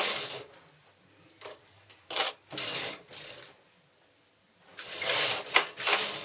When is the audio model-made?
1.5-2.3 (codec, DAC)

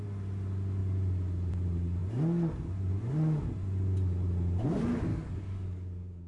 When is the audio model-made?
5.1-6.3 (codec, DAC)

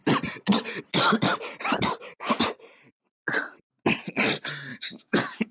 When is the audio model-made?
4.7-5.5 (codec, DAC)

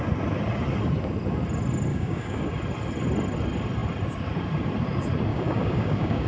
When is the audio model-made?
1.9-2.4 (codec, DAC); 5.3-6.3